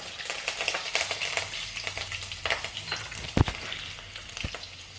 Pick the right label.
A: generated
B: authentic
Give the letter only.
B